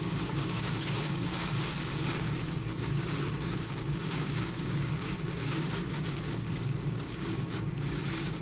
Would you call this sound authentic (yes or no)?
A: no